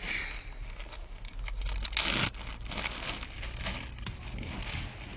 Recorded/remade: recorded